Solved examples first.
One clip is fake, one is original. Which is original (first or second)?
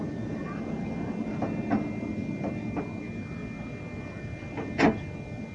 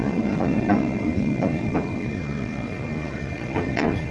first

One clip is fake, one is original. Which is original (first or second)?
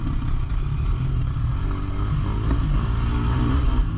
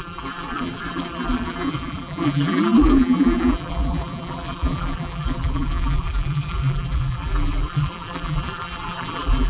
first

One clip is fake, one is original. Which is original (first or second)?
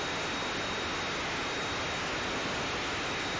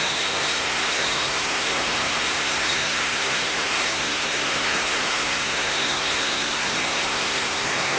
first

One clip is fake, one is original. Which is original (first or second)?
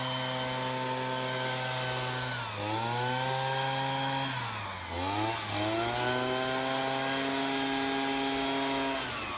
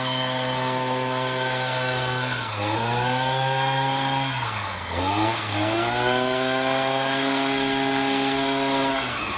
first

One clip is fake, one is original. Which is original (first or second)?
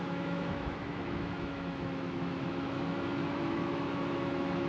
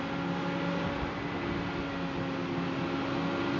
second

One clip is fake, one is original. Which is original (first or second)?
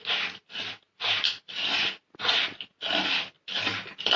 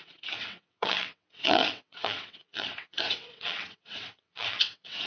first